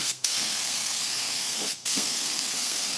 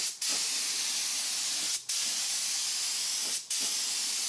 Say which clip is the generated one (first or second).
first